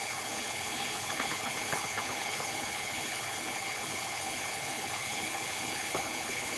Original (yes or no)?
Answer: no